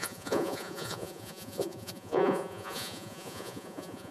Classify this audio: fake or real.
fake